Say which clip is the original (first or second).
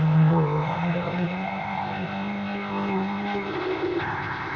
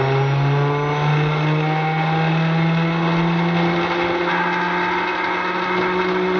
second